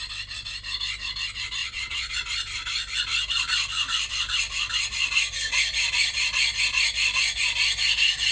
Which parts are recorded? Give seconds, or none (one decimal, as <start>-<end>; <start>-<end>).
0.0-1.6; 2.1-8.3